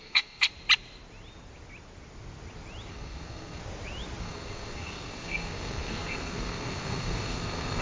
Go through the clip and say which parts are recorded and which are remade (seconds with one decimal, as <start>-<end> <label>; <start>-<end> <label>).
0.0-0.5 remade; 0.5-2.9 recorded; 2.9-3.6 remade; 3.6-4.2 recorded; 4.2-7.8 remade